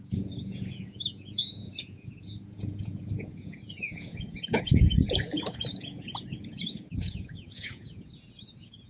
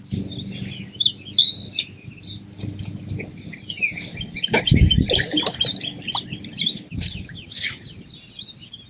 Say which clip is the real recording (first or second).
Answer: second